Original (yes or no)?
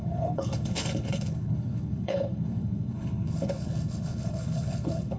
no